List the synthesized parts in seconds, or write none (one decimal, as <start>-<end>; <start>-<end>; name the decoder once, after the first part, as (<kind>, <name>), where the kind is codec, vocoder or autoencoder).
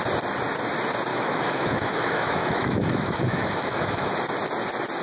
1.1-4.1 (autoencoder, DAC-VAE)